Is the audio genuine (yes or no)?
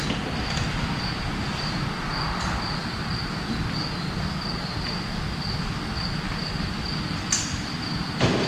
yes